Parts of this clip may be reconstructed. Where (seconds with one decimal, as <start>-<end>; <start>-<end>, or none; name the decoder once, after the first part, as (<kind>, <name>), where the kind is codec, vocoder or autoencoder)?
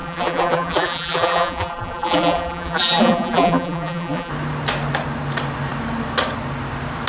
0.0-4.3 (vocoder, BigVGAN v2)